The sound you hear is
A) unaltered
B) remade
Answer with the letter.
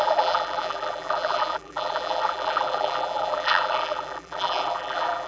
B